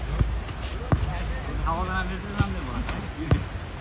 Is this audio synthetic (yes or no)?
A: no